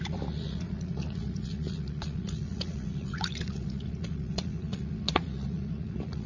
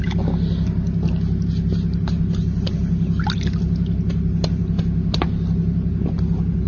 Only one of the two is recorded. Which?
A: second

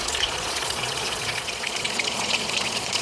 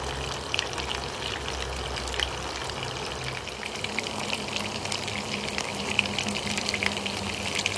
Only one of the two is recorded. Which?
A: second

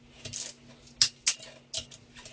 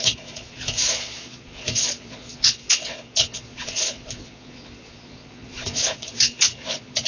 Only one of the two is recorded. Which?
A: first